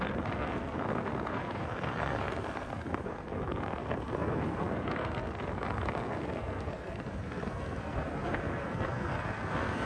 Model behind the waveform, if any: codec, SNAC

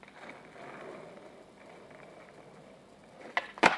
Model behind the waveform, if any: none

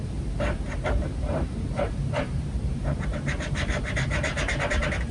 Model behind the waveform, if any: vocoder, BigVGAN v2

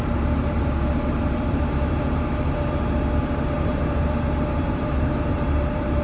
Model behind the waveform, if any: vocoder, BigVGAN v2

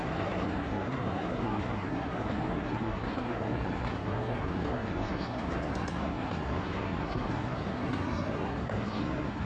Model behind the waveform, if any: codec, SNAC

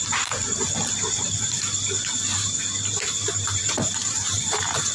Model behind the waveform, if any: vocoder, BigVGAN v2